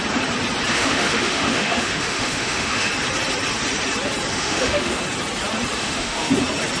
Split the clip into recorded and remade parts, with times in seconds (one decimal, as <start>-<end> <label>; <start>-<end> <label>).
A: 0.0-0.7 recorded; 0.7-2.9 remade; 2.9-4.3 recorded; 4.3-5.0 remade; 5.0-5.8 recorded; 5.8-6.3 remade; 6.3-6.8 recorded